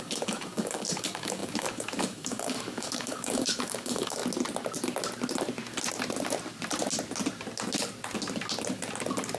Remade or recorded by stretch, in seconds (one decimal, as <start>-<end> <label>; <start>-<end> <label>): 0.0-4.2 remade; 4.2-9.4 recorded